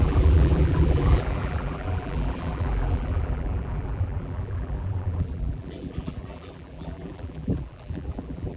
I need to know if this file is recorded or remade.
remade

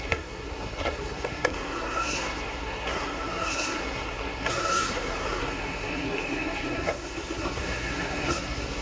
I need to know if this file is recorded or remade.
remade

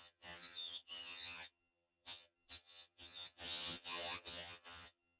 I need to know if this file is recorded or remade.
remade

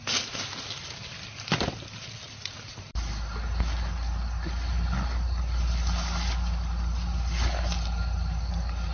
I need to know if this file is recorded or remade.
recorded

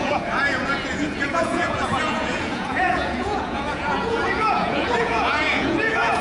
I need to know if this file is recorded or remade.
remade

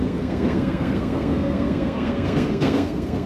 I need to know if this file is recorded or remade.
remade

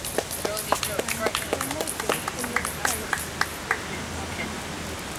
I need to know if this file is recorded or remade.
recorded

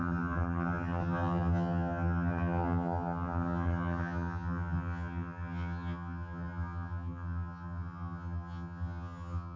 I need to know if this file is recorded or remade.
remade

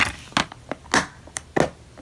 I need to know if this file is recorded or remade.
recorded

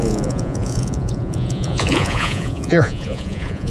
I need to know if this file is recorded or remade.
remade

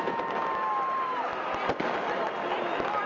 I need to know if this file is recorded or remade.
recorded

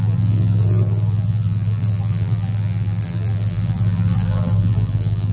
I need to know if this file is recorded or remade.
remade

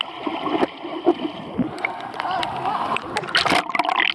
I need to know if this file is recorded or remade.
recorded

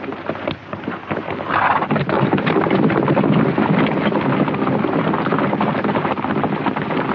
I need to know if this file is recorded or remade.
recorded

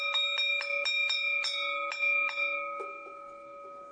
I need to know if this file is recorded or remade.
recorded